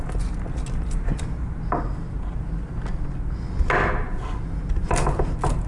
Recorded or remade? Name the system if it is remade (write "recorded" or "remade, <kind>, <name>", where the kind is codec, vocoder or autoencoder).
recorded